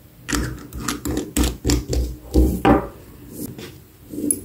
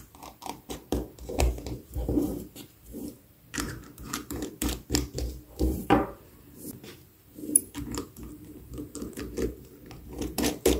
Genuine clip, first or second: first